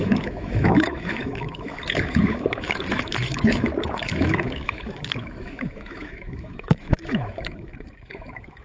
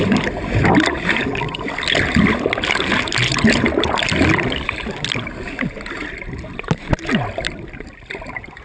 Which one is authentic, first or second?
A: second